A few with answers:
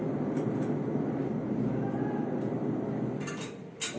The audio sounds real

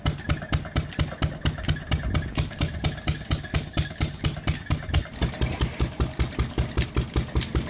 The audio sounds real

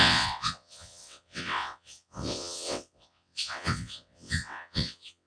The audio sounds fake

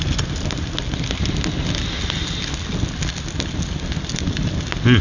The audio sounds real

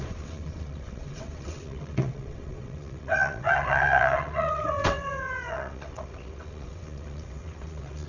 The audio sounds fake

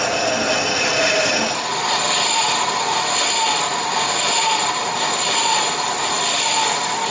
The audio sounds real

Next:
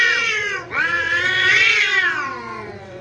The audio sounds fake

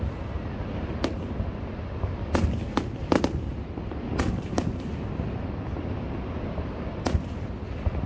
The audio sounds real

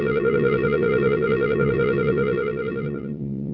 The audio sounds fake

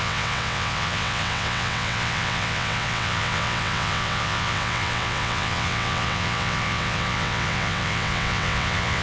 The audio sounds fake